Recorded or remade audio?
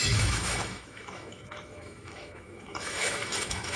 remade